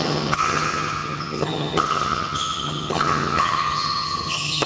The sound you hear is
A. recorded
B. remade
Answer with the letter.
B